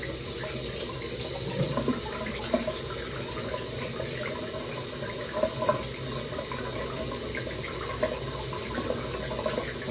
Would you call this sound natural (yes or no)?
yes